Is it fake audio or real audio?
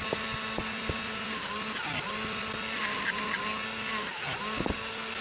real